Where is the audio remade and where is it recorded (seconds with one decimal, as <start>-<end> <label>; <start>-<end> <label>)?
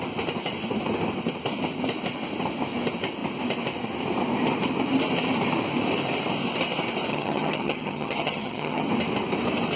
0.0-7.1 recorded; 7.1-8.9 remade; 8.9-9.8 recorded